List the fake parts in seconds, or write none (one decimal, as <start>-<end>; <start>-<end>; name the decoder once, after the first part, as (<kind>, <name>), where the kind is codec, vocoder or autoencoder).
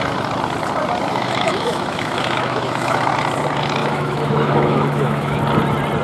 1.1-3.1 (autoencoder, DAC-VAE); 3.8-5.4